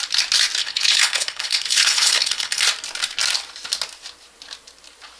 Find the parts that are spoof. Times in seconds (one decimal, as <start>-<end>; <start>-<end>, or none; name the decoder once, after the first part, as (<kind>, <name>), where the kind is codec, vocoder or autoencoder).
0.6-2.6 (codec, HILCodec)